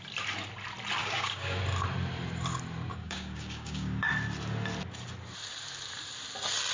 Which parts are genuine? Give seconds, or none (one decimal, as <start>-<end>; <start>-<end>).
0.0-1.0; 1.6-2.9; 4.1-6.7